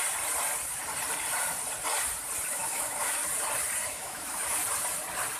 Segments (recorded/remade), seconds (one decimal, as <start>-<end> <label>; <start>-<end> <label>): 0.0-2.5 recorded; 2.5-3.2 remade; 3.2-3.9 recorded; 3.9-4.6 remade; 4.6-5.4 recorded